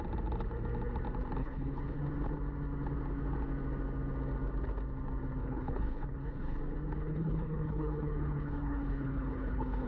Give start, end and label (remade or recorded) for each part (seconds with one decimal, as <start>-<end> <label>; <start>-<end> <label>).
0.0-1.4 recorded; 1.4-2.0 remade; 2.0-5.4 recorded; 5.4-6.6 remade; 6.6-7.0 recorded; 7.0-9.9 remade